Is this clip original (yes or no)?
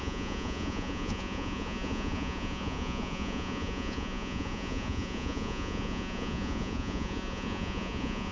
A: no